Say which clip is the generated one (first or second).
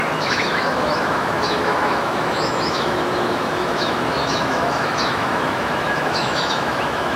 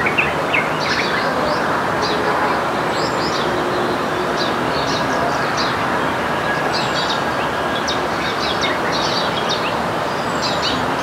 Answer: first